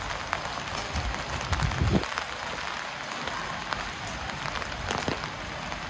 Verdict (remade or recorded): recorded